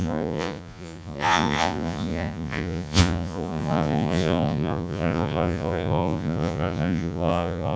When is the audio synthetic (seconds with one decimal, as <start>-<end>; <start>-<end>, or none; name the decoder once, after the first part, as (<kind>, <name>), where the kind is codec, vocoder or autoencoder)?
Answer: 0.0-7.8 (vocoder, Vocos)